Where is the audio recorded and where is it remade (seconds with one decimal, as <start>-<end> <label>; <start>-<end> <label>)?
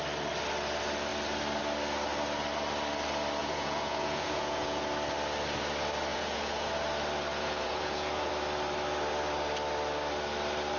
0.0-3.4 recorded; 3.4-4.9 remade; 4.9-6.1 recorded; 6.1-6.7 remade; 6.7-7.3 recorded; 7.3-8.3 remade; 8.3-10.8 recorded